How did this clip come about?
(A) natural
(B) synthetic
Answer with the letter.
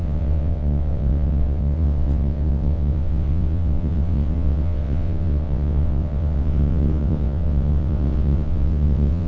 B